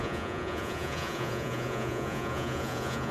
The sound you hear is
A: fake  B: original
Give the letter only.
A